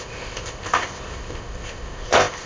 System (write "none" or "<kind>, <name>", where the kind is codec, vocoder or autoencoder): codec, ZipCodec